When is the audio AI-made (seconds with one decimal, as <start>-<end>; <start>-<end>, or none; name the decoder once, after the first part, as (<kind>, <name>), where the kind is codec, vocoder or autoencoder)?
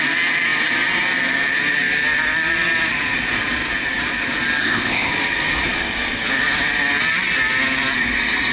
4.6-5.1 (codec, ZipCodec)